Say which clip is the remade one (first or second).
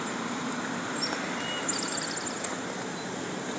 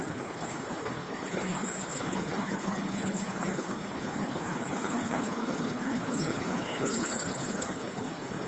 second